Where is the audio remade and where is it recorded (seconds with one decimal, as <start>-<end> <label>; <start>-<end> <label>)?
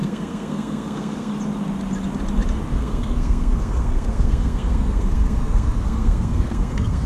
0.0-1.3 remade; 1.3-2.7 recorded; 2.7-7.1 remade